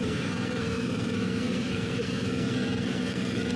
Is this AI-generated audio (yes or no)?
yes